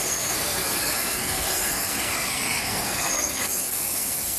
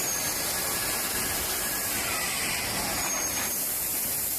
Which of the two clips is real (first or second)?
second